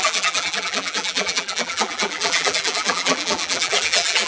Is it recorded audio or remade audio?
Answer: remade